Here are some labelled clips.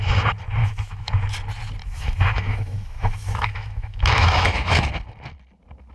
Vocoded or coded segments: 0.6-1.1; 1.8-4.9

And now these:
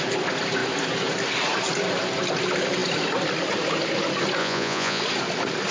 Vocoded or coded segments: 4.4-5.0

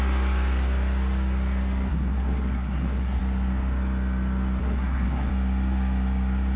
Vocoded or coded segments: 1.9-3.2; 4.6-5.3

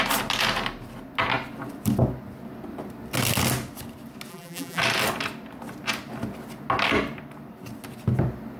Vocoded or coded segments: 4.3-4.8